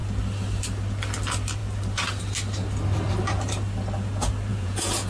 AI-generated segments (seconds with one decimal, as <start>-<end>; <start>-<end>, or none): 4.5-5.1